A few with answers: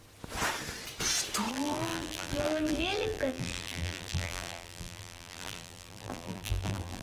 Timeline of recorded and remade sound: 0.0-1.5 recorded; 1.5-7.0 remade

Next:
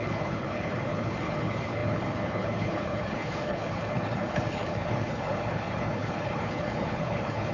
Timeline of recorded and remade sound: 0.0-7.5 remade

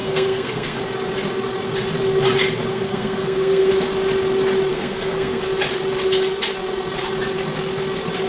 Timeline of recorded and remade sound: 0.0-0.8 remade; 0.8-2.7 recorded; 2.7-3.7 remade; 3.7-4.7 recorded; 4.7-5.4 remade; 5.4-8.3 recorded

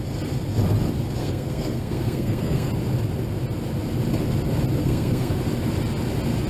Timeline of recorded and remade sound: 0.0-1.2 recorded; 1.2-2.7 remade; 2.7-4.8 recorded; 4.8-5.4 remade; 5.4-6.5 recorded

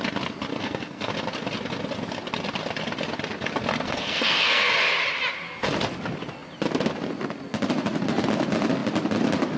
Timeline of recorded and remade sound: 0.0-0.5 recorded; 0.5-1.1 remade; 1.1-3.7 recorded; 3.7-4.7 remade; 4.7-9.6 recorded